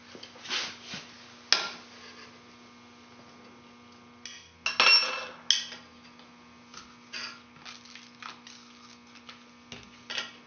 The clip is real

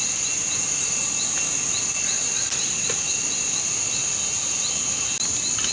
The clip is real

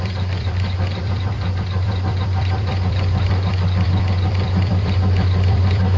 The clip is fake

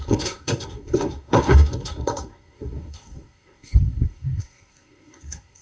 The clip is fake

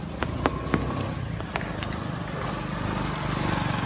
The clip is real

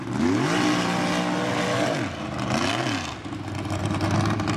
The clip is real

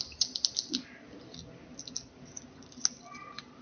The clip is real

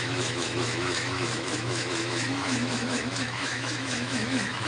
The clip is fake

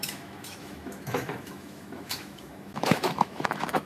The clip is fake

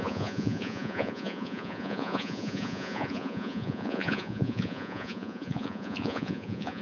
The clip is fake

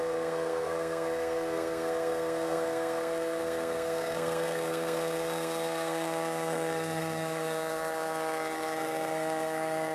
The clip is fake